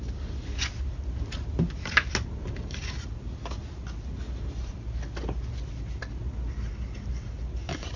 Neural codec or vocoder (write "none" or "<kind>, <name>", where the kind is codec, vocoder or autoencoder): none